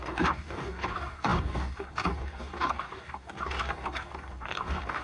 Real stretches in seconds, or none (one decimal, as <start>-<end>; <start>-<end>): none